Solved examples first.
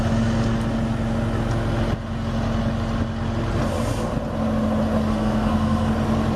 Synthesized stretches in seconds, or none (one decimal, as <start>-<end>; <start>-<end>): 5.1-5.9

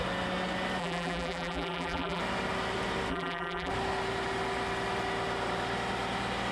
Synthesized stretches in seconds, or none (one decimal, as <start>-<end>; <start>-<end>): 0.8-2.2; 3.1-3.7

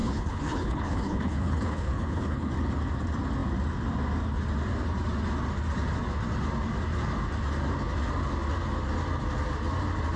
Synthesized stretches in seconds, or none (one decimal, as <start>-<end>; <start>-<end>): 0.0-2.5

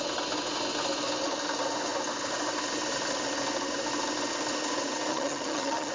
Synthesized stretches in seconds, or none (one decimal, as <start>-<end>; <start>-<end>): 5.1-5.9

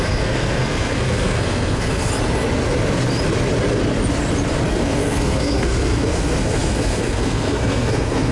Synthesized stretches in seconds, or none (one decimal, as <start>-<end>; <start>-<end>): 0.0-2.1; 4.7-8.3

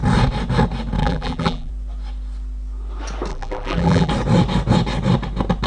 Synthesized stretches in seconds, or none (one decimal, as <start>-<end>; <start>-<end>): 1.0-1.7; 3.3-4.1